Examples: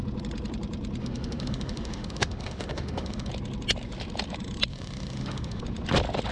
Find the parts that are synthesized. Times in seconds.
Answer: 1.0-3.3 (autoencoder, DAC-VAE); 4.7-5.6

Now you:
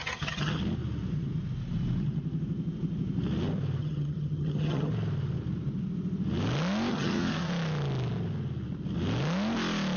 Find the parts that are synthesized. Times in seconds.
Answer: 0.0-0.6 (vocoder, HiFi-GAN); 3.8-4.9; 6.9-7.5

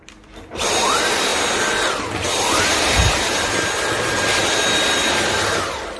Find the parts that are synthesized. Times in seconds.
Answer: none

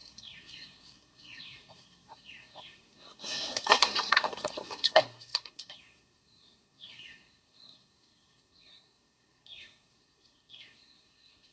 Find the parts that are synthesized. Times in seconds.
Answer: 0.0-11.5 (codec, SNAC)

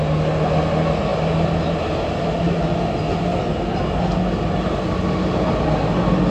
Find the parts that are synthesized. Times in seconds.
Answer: none

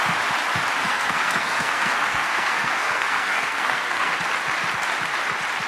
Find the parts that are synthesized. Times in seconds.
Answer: 0.8-4.2 (codec, SNAC)